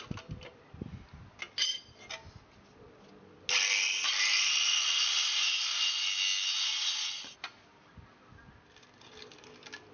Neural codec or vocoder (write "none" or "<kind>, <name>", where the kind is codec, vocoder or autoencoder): none